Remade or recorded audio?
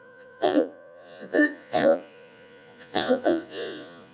remade